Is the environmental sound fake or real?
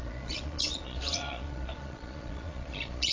fake